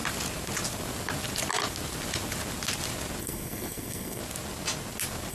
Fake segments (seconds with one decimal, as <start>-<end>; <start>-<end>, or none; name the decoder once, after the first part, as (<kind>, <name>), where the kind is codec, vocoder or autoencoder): 3.2-4.2 (codec, SNAC)